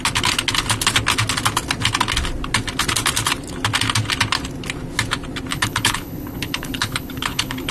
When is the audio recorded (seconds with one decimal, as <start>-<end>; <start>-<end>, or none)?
0.0-5.5